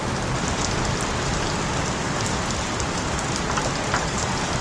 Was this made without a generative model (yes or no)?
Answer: no